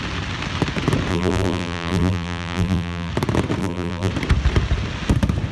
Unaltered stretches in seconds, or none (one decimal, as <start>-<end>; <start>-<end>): 0.0-1.1; 3.1-3.6; 4.1-5.5